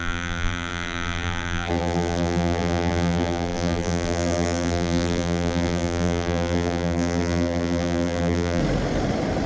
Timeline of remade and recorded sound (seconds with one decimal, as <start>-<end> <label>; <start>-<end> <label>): 0.0-8.6 remade; 8.6-9.5 recorded